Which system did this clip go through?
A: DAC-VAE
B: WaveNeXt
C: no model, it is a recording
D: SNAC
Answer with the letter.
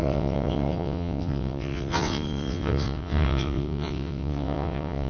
B